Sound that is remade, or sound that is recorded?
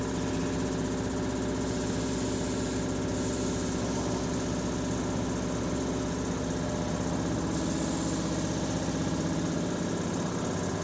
recorded